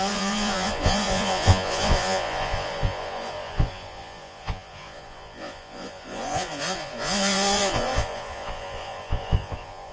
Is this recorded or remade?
remade